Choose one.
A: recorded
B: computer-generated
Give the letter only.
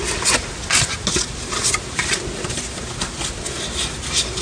A